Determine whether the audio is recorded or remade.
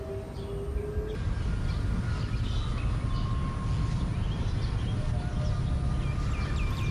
recorded